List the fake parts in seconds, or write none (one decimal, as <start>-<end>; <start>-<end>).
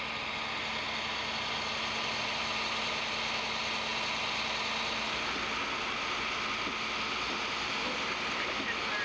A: none